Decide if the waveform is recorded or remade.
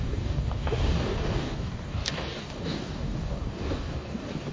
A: remade